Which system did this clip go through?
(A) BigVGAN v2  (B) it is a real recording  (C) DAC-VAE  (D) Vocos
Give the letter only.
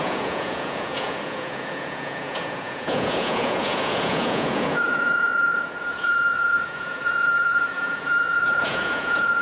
D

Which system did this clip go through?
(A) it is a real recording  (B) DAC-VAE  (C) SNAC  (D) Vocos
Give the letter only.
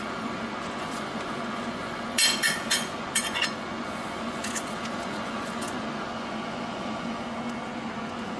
D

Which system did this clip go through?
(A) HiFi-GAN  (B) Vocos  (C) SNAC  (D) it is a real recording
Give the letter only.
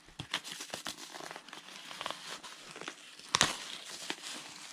D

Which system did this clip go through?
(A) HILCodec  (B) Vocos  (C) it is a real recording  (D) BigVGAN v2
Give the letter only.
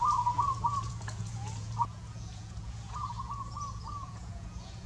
B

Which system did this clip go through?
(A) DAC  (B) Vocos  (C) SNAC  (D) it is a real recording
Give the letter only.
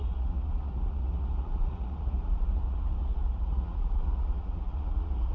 B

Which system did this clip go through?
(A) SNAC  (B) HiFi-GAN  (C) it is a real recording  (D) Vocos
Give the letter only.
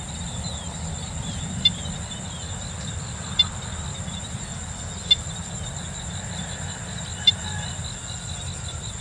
C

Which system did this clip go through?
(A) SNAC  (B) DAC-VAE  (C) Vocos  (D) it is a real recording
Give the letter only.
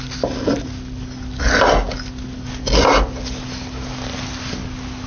D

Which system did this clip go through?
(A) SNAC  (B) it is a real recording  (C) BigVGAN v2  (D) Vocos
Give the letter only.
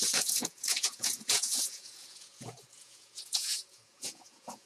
D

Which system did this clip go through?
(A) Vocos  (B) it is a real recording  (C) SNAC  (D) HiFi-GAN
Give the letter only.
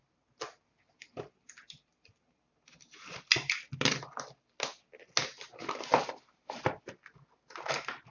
B